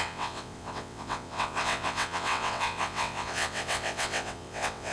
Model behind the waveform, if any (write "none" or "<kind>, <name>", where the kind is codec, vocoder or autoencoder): vocoder, WaveNeXt